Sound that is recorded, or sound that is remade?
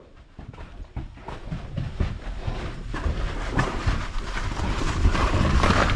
recorded